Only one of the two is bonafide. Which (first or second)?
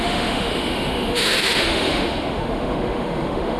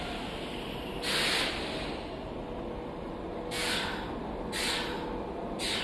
second